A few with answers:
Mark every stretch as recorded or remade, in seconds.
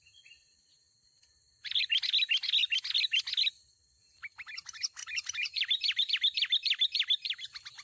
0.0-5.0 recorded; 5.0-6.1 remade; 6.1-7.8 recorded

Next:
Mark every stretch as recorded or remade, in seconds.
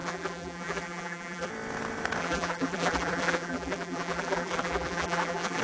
0.0-1.5 remade; 1.5-2.2 recorded; 2.2-5.6 remade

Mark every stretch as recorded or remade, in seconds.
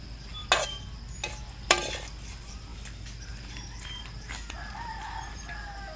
0.0-0.4 remade; 0.4-1.3 recorded; 1.3-6.0 remade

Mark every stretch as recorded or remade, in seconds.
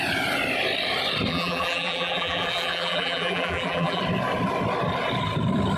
0.0-1.3 recorded; 1.3-4.0 remade; 4.0-5.8 recorded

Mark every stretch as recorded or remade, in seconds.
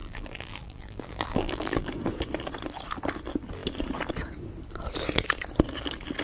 0.0-1.9 remade; 1.9-6.2 recorded